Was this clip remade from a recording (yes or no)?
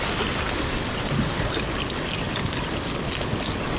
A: no